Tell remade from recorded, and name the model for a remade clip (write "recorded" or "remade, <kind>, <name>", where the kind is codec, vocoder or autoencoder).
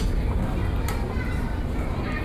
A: recorded